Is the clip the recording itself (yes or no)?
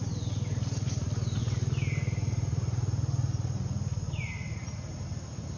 yes